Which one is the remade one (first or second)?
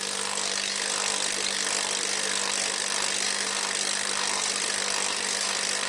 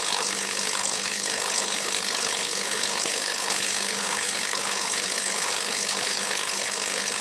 second